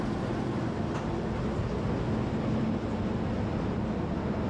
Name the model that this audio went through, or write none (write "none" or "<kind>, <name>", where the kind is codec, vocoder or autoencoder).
none